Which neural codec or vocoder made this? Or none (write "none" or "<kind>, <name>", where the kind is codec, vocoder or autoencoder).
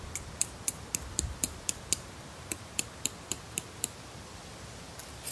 none